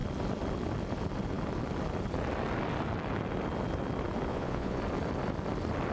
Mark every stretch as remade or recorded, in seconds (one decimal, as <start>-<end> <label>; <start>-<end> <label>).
0.0-4.3 recorded; 4.3-4.8 remade; 4.8-5.9 recorded